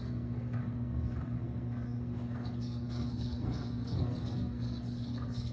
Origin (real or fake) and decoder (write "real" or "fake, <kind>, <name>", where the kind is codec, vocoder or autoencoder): fake, codec, SNAC